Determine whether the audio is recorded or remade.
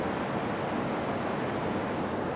recorded